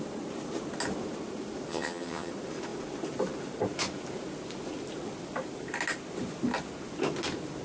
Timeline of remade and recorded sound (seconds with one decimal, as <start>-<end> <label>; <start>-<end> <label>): 0.0-1.7 recorded; 1.7-2.3 remade; 2.3-7.6 recorded